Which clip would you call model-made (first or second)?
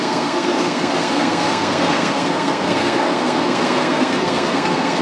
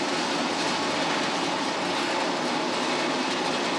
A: first